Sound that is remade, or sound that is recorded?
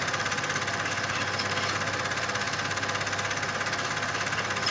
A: recorded